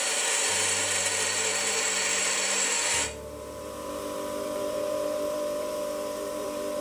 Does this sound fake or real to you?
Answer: fake